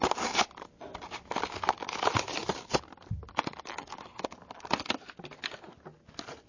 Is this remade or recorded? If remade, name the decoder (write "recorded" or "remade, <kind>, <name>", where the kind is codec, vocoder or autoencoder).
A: recorded